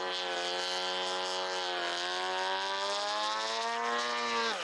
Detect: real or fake real